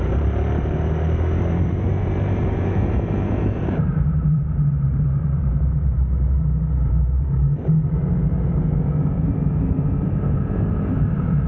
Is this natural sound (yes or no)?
no